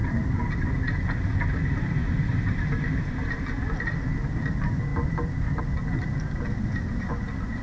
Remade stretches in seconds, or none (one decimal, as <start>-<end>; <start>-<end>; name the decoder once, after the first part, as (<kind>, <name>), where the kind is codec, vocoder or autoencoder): 2.0-3.7 (vocoder, BigVGAN v2); 4.9-5.6